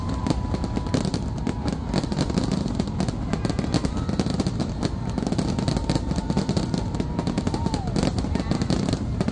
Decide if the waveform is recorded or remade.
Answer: recorded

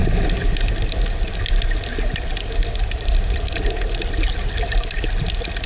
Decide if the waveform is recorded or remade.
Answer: recorded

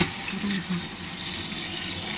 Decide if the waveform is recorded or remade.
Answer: recorded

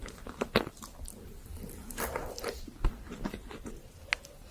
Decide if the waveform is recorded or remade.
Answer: recorded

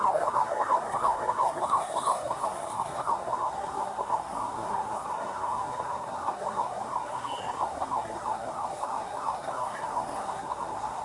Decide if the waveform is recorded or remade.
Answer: remade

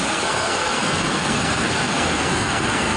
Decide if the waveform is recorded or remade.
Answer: remade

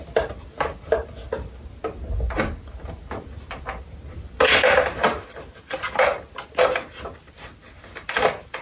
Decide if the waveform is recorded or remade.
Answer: recorded